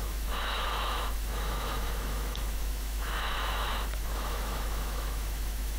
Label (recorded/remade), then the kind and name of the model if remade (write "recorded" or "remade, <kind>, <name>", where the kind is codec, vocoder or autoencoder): remade, autoencoder, DAC-VAE